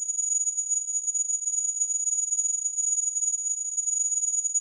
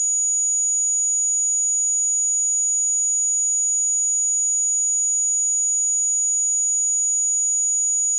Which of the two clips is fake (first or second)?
first